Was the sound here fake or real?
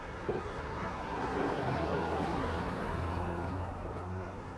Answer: fake